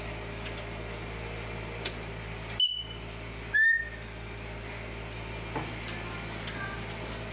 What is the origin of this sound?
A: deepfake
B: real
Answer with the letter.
B